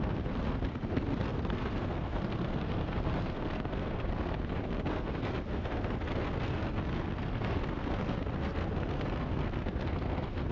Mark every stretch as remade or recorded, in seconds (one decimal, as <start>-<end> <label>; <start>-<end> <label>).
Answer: 0.0-10.5 remade